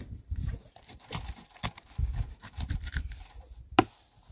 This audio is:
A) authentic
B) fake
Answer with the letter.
A